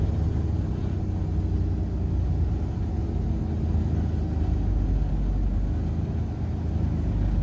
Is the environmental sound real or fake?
real